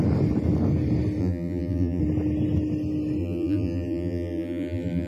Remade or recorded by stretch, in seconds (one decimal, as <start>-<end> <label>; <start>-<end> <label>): 0.0-1.2 recorded; 1.2-2.0 remade; 2.0-3.2 recorded; 3.2-5.1 remade